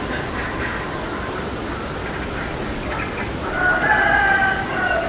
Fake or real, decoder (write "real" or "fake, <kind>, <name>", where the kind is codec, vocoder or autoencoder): real